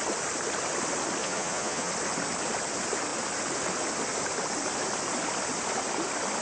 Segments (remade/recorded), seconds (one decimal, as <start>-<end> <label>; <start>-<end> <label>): 0.0-1.2 recorded; 1.2-1.9 remade; 1.9-6.4 recorded